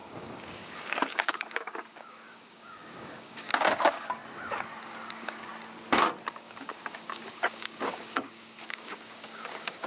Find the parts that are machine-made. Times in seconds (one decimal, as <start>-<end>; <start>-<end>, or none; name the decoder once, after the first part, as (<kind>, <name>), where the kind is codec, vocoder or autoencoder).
0.0-4.2 (codec, DAC); 5.1-5.5; 6.3-9.9